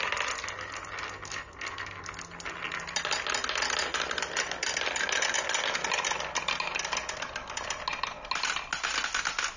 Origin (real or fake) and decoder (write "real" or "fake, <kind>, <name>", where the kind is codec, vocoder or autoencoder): real